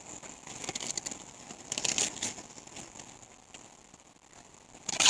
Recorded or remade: recorded